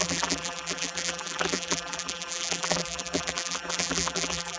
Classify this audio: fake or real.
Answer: fake